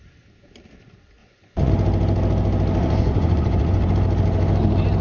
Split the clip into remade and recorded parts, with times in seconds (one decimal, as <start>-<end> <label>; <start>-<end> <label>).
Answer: 0.0-1.2 recorded; 1.2-1.7 remade; 1.7-2.8 recorded; 2.8-3.9 remade; 3.9-5.0 recorded